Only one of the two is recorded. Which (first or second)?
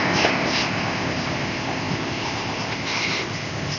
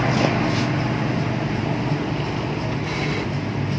second